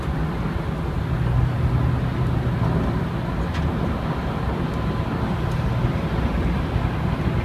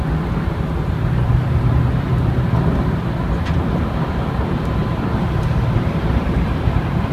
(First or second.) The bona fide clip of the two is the first